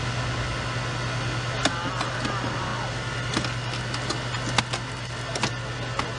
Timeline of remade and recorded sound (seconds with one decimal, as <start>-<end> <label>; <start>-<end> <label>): 0.0-6.2 recorded